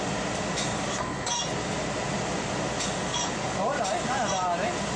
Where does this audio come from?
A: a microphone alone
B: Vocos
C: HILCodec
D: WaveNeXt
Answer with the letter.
A